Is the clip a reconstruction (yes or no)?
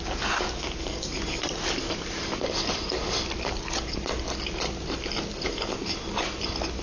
no